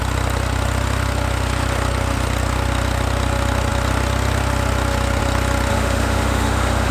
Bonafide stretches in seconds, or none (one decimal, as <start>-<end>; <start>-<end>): 0.0-5.7